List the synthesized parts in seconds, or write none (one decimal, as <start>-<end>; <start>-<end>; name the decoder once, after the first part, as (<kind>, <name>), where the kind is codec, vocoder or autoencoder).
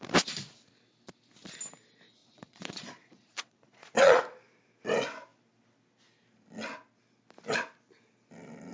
2.2-4.2 (vocoder, Vocos)